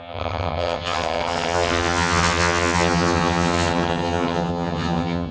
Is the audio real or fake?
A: fake